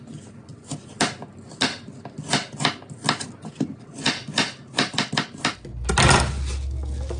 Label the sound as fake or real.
real